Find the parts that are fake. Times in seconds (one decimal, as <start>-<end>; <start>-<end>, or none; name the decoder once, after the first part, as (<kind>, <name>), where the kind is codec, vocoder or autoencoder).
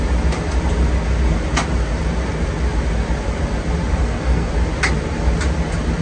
4.0-4.5 (codec, SNAC)